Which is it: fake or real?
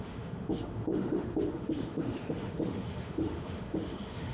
fake